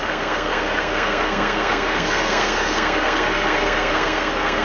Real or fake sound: fake